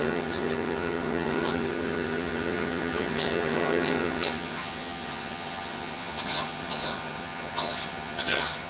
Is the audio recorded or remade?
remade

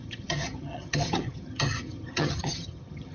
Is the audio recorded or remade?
remade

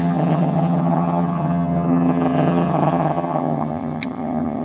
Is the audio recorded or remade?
remade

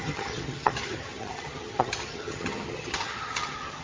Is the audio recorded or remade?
remade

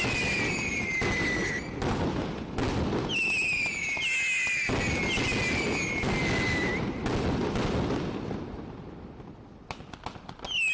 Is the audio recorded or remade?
recorded